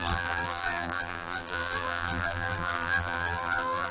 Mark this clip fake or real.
fake